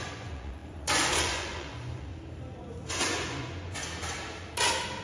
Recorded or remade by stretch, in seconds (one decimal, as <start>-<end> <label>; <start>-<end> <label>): 0.0-2.1 remade; 2.1-2.9 recorded; 2.9-3.8 remade; 3.8-5.0 recorded